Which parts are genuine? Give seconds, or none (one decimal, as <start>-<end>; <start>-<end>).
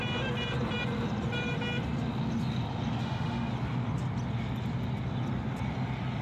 0.0-3.0; 3.5-6.2